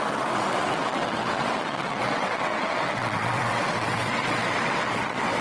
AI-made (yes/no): yes